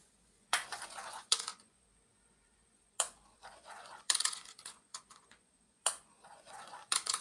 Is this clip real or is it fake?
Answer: fake